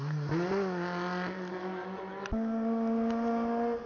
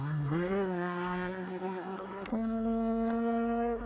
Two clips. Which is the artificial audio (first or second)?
second